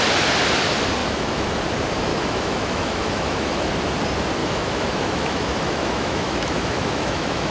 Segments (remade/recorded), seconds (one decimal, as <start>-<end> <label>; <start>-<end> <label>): 0.0-1.0 recorded; 1.0-1.6 remade; 1.6-2.1 recorded; 2.1-3.7 remade; 3.7-4.4 recorded; 4.4-7.5 remade